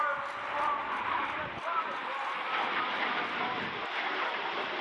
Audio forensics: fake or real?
real